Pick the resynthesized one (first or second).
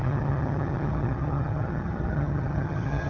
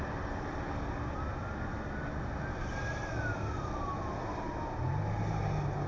first